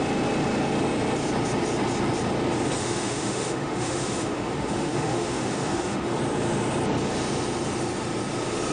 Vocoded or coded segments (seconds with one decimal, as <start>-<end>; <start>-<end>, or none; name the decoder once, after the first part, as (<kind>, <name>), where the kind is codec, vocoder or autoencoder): 2.8-6.2 (autoencoder, DAC-VAE)